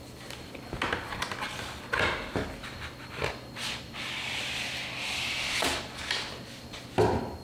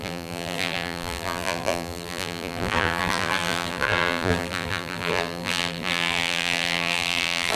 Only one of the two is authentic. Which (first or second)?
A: first